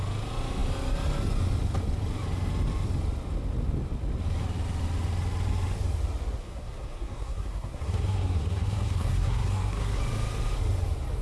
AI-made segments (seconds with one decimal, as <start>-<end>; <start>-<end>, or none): 6.4-10.0